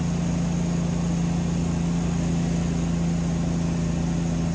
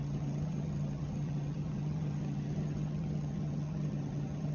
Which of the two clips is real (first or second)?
first